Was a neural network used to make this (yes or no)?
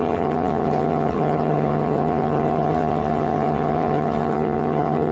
yes